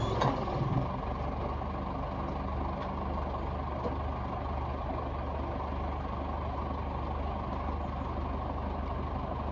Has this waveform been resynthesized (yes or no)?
no